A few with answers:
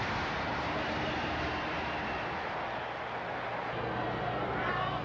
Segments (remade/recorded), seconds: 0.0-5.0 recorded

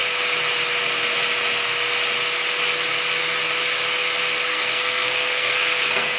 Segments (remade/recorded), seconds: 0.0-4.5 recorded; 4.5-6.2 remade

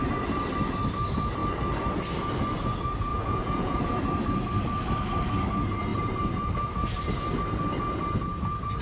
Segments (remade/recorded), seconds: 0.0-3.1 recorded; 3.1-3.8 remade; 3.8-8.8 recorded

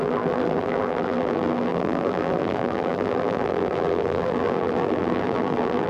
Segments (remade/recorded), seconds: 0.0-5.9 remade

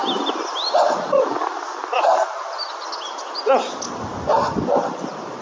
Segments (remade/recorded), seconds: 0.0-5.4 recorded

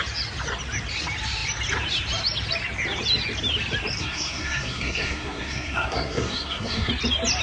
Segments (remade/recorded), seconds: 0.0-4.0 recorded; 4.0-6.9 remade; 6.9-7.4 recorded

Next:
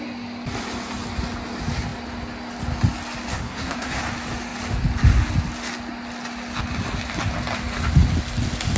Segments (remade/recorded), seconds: 0.0-3.3 recorded; 3.3-4.0 remade; 4.0-8.8 recorded

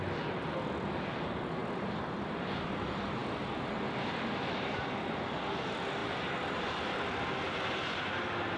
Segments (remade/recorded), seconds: 0.0-8.6 recorded